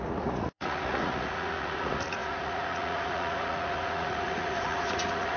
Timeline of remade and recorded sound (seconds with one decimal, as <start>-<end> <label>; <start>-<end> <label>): 0.0-5.4 remade